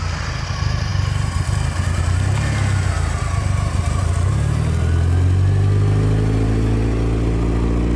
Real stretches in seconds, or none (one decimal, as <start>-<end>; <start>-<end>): 0.0-8.0